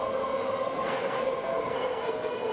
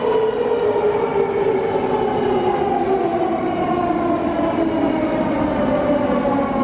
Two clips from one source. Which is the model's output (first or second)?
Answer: first